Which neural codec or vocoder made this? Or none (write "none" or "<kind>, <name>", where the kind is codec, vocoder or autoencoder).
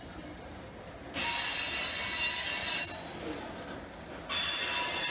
none